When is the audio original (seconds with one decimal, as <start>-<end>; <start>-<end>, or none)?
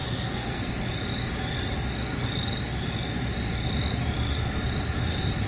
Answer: 0.7-5.5